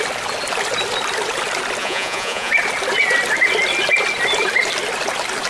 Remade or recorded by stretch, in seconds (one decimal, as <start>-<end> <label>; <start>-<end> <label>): 0.0-1.8 recorded; 1.8-2.5 remade; 2.5-5.5 recorded